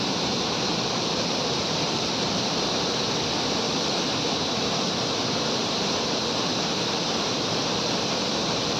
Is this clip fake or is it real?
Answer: fake